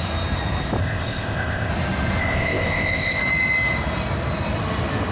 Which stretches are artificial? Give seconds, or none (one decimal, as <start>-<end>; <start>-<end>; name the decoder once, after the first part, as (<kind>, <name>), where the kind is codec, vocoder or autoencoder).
0.8-1.7 (codec, ZipCodec); 2.2-3.2